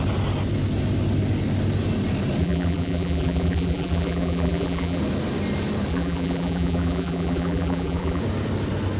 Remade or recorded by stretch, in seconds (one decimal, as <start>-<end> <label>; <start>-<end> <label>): 0.0-2.4 recorded; 2.4-5.0 remade; 5.0-5.9 recorded; 5.9-8.2 remade; 8.2-9.0 recorded